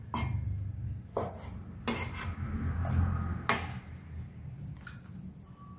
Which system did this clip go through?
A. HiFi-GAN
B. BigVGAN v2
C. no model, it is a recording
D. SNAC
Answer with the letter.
C